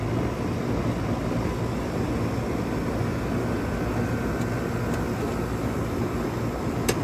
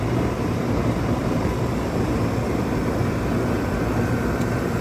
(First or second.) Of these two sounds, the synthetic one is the second